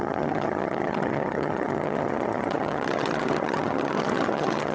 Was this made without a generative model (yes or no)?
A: no